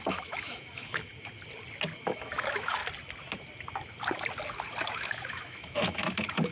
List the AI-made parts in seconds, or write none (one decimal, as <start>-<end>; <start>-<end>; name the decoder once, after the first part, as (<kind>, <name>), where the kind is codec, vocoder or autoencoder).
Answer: 0.0-1.1 (autoencoder, DAC-VAE); 2.0-2.8; 4.9-6.5